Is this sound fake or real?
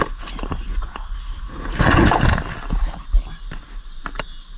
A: real